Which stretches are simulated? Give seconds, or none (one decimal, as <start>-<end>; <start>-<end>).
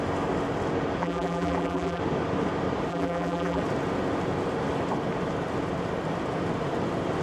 1.0-2.0; 2.9-3.6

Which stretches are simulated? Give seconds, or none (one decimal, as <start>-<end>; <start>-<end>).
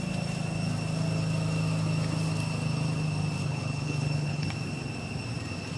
3.4-4.5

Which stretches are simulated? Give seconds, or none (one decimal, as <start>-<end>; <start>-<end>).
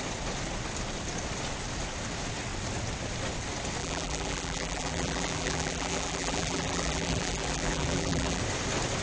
3.8-8.4